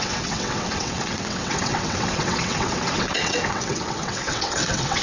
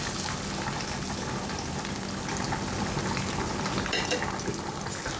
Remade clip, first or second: first